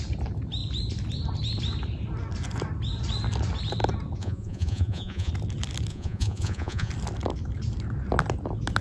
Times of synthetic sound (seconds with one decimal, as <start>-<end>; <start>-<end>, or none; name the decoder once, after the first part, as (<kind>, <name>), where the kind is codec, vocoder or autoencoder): 4.2-5.3 (vocoder, Vocos); 5.9-6.9